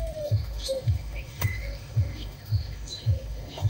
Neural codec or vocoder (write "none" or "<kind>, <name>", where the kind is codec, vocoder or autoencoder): autoencoder, DAC-VAE